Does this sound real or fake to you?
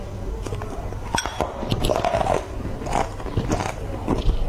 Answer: real